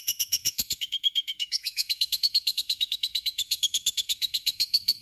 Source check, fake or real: fake